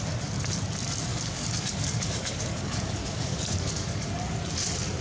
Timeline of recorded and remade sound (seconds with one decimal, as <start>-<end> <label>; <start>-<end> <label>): 0.0-1.1 recorded; 1.1-4.1 remade; 4.1-5.0 recorded